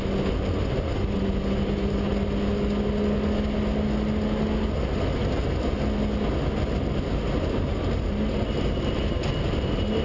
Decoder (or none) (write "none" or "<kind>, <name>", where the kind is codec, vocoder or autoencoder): none